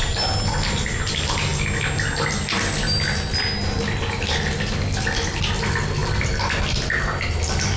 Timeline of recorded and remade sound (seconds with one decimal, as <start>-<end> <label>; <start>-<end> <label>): 0.0-7.8 recorded